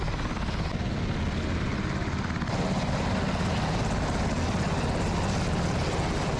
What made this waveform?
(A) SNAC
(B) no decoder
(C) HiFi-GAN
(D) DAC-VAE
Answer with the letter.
B